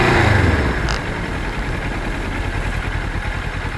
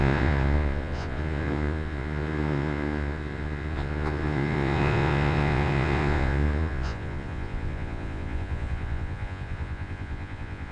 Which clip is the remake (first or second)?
second